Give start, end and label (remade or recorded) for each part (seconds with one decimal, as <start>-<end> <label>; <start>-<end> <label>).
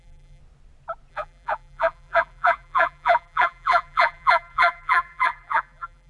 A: 0.0-0.4 remade; 0.4-1.1 recorded; 1.1-6.1 remade